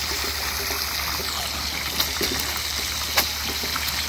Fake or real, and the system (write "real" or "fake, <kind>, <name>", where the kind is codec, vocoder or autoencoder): real